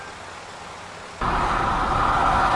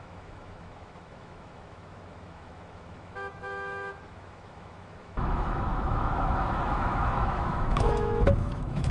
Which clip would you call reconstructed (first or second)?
second